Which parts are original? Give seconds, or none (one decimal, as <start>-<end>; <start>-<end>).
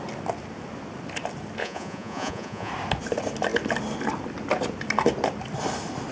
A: 0.0-1.6; 2.7-6.1